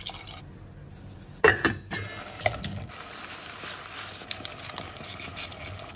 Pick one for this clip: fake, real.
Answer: real